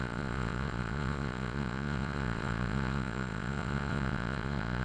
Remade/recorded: remade